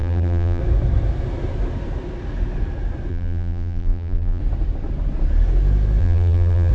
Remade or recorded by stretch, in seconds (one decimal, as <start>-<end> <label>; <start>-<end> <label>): 0.0-0.6 remade; 0.6-3.1 recorded; 3.1-4.4 remade; 4.4-6.0 recorded; 6.0-6.7 remade